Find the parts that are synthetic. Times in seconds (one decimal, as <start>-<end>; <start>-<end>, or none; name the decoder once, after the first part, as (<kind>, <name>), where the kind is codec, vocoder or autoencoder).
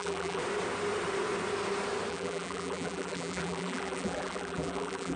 0.0-0.4 (vocoder, BigVGAN v2); 2.1-5.2